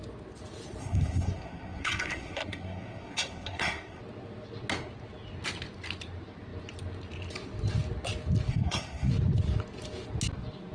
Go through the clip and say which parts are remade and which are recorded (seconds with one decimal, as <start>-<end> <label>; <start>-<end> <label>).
0.0-0.8 recorded; 0.8-4.0 remade; 4.0-8.5 recorded; 8.5-9.1 remade; 9.1-10.7 recorded